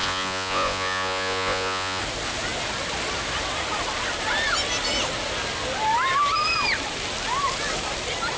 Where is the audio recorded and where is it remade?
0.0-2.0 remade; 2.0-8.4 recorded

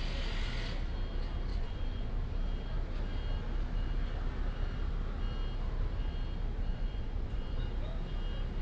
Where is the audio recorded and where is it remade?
0.0-1.5 recorded; 1.5-2.1 remade; 2.1-6.7 recorded; 6.7-7.6 remade; 7.6-8.6 recorded

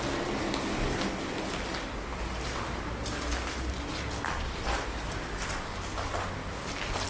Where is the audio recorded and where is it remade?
0.0-7.1 recorded

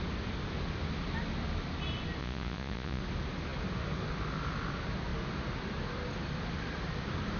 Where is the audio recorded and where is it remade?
0.0-2.2 recorded; 2.2-3.0 remade; 3.0-7.4 recorded

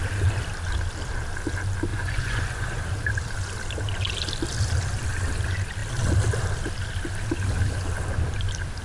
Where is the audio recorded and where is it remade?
0.0-1.9 recorded; 1.9-2.8 remade; 2.8-8.8 recorded